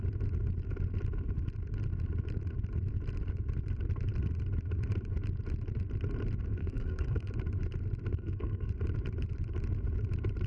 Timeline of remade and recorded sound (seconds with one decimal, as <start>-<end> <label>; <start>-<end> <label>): 0.0-6.6 recorded; 6.6-7.3 remade; 7.3-8.1 recorded; 8.1-8.7 remade; 8.7-10.5 recorded